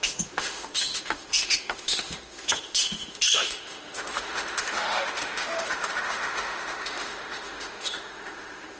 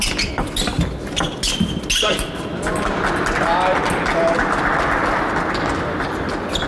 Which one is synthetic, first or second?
first